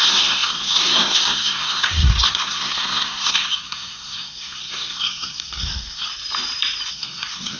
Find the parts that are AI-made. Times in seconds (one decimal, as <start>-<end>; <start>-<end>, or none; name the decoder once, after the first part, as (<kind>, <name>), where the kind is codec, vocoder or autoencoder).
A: 0.0-6.1 (codec, SNAC); 6.9-7.6